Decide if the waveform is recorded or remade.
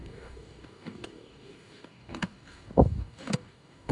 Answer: remade